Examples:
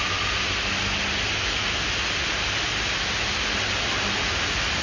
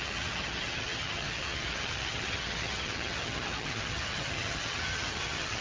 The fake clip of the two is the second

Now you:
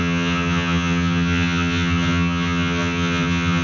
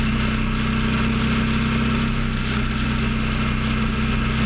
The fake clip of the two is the first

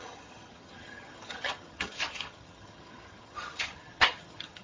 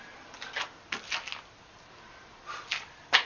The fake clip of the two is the first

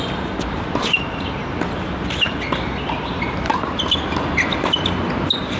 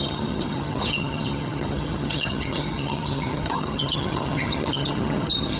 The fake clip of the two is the second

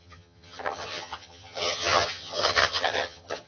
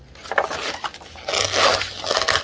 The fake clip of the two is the first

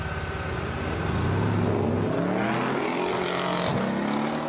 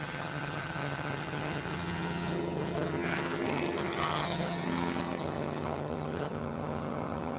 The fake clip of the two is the second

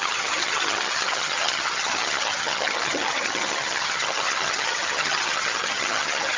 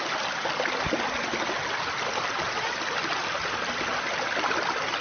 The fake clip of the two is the first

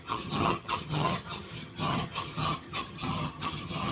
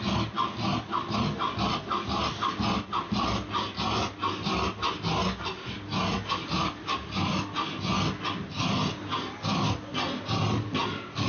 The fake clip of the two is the first